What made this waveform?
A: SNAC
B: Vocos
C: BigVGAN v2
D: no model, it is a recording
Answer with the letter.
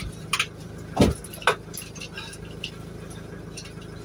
D